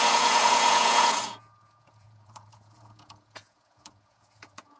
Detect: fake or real fake